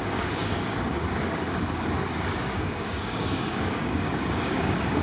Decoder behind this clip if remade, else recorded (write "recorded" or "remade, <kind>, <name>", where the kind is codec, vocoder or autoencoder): remade, codec, DAC